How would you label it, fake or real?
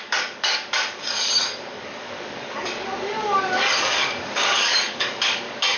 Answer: fake